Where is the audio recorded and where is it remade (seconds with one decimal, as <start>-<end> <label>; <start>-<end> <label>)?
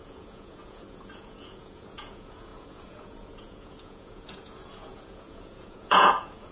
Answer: 0.0-6.5 remade